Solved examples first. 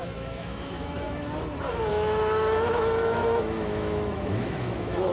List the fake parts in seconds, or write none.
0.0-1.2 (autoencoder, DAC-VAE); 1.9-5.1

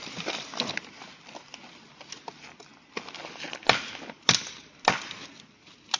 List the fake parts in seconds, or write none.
none

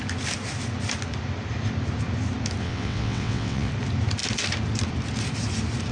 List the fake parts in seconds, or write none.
2.6-3.7 (vocoder, WaveNeXt)

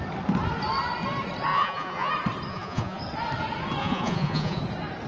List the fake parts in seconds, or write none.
1.5-2.1 (vocoder, Vocos); 2.5-3.0; 3.8-4.6

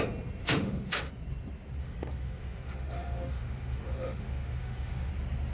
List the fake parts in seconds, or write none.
0.4-1.1 (autoencoder, DAC-VAE); 1.8-5.1

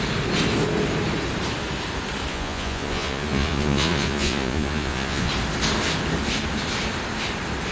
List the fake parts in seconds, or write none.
2.3-5.3 (vocoder, Vocos)

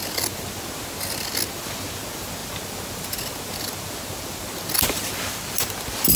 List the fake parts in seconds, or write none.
none

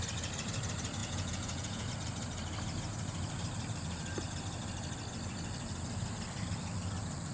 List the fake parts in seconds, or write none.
1.0-1.9 (vocoder, Vocos)